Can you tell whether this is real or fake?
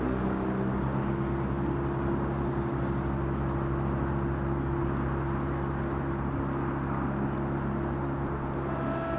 real